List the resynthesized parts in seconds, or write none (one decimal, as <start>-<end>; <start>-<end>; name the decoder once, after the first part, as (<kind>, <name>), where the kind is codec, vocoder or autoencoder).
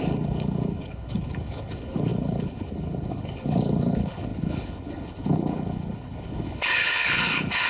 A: 0.0-7.7 (codec, HILCodec)